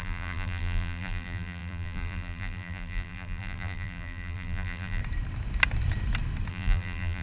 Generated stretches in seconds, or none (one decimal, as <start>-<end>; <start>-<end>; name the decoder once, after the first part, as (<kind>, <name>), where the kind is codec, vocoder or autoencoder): 0.0-5.0 (vocoder, BigVGAN v2); 6.5-7.2